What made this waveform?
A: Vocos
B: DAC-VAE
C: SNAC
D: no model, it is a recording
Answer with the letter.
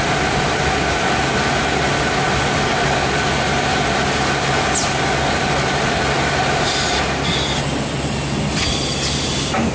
D